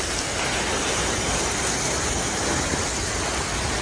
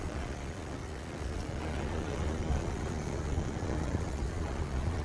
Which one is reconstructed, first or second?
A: second